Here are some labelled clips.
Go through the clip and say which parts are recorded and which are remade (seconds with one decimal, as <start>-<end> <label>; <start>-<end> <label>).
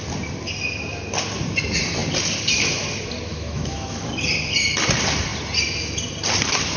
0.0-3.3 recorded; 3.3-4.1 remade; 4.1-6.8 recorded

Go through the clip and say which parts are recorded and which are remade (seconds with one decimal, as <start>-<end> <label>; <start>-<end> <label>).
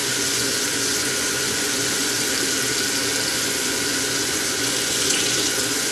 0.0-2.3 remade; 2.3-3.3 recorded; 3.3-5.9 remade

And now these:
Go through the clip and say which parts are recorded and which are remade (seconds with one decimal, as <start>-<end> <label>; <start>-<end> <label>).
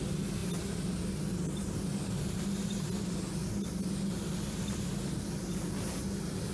0.0-6.5 recorded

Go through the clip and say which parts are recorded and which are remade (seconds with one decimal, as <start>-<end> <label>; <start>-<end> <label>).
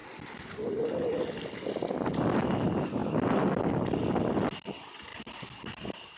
0.0-3.0 recorded; 3.0-3.6 remade; 3.6-6.2 recorded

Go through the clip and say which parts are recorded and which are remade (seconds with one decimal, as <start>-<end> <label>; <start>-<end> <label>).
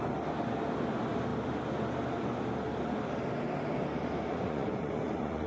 0.0-4.3 recorded; 4.3-5.5 remade